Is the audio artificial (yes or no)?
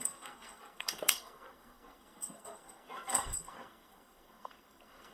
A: yes